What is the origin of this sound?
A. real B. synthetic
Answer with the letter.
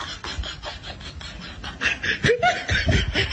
A